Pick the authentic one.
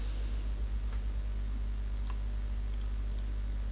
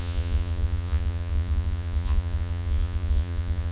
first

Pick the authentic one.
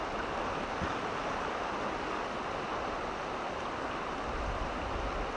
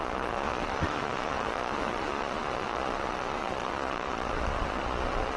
first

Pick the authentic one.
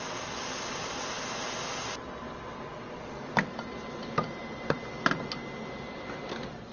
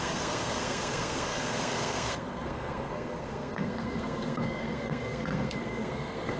first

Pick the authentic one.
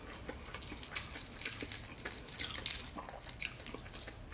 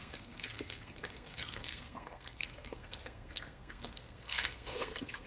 first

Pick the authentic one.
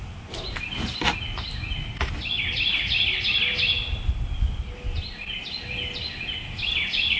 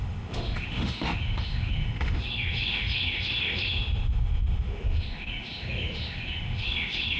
first